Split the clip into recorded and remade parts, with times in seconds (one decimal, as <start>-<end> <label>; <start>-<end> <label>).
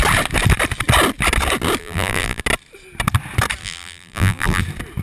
0.0-1.8 recorded; 1.8-2.4 remade; 2.4-3.6 recorded; 3.6-4.6 remade; 4.6-5.0 recorded